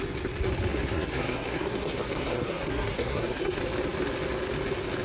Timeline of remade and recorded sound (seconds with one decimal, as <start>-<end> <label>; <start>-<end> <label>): 0.0-0.7 recorded; 0.7-3.6 remade; 3.6-5.0 recorded